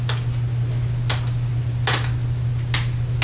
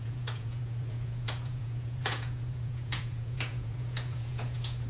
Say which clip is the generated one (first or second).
second